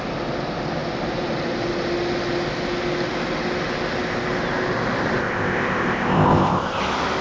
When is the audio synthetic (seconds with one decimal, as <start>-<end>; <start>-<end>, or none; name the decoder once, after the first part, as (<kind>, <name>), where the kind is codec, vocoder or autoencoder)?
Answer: 5.2-6.8 (codec, ZipCodec)